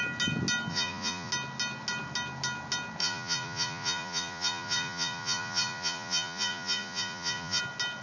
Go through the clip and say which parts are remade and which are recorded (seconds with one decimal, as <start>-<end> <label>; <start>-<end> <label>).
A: 0.0-0.7 recorded; 0.7-1.3 remade; 1.3-3.0 recorded; 3.0-7.6 remade; 7.6-8.0 recorded